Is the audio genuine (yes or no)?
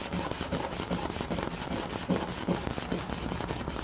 yes